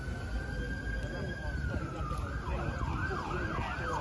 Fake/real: real